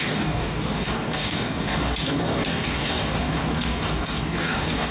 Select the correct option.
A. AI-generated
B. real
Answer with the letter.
A